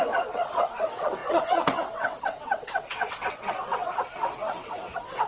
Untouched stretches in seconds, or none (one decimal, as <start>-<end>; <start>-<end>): none